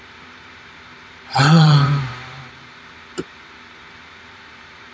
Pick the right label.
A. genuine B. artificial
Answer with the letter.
B